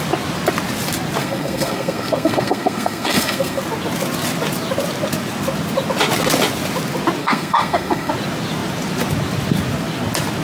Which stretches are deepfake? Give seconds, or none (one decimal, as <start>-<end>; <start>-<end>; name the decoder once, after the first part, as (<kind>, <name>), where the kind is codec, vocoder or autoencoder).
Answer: 1.2-3.6 (codec, SNAC); 7.2-8.1